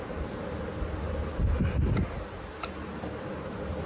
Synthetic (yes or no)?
no